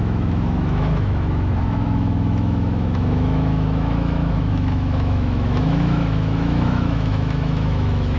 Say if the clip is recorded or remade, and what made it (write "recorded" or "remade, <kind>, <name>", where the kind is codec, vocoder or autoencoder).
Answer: remade, autoencoder, DAC-VAE